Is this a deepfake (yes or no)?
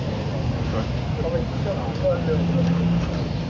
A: no